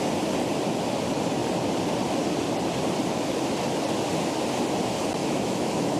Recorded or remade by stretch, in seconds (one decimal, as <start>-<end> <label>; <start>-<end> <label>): 0.0-5.2 recorded; 5.2-6.0 remade